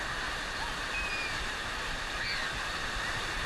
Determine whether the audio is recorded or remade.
recorded